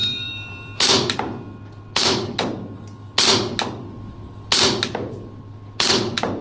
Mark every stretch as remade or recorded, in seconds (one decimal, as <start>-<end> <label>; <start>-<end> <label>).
0.0-1.1 remade; 1.1-6.4 recorded